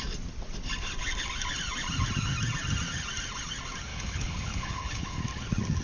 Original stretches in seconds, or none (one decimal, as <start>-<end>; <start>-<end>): 0.0-3.9; 5.2-5.8